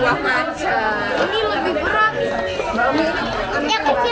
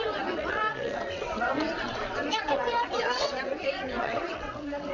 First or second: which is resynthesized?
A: second